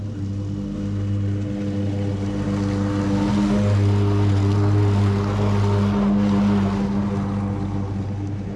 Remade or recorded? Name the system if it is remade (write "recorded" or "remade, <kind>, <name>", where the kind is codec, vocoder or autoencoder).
recorded